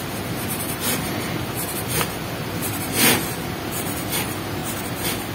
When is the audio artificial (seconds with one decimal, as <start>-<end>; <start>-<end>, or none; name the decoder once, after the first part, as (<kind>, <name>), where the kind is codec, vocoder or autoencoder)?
0.0-4.6 (vocoder, BigVGAN v2)